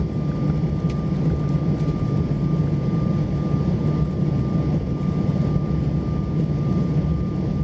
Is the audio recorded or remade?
recorded